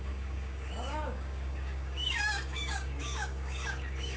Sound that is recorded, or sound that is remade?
remade